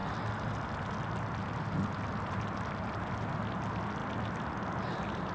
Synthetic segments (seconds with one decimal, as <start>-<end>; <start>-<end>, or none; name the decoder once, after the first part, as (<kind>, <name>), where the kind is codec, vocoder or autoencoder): none